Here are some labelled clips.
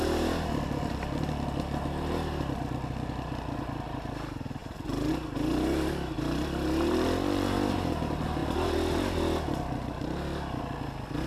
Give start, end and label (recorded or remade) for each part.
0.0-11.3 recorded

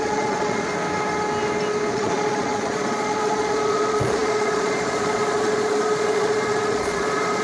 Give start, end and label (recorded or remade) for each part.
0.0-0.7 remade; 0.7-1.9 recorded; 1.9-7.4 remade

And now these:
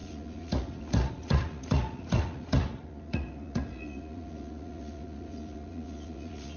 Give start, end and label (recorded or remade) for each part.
0.0-6.6 remade

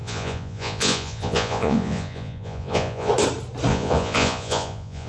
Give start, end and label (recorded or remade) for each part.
0.0-3.1 remade; 3.1-3.7 recorded; 3.7-5.1 remade

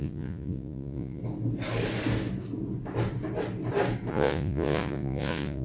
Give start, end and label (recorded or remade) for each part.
0.0-1.2 remade; 1.2-4.1 recorded; 4.1-5.6 remade

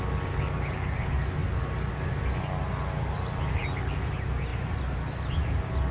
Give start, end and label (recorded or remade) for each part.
0.0-5.9 recorded